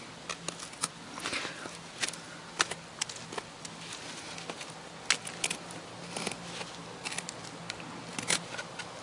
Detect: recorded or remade recorded